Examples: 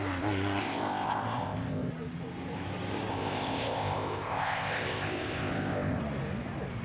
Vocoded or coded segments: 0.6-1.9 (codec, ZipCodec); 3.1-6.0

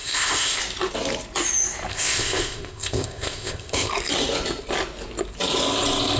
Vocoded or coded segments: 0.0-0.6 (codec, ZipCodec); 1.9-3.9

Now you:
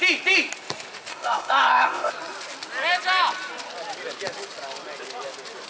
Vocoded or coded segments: 1.1-2.1 (codec, ZipCodec)

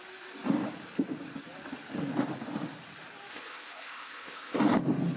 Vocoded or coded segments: 3.3-4.6 (codec, ZipCodec)